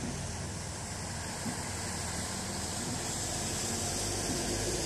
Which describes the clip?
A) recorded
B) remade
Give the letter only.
A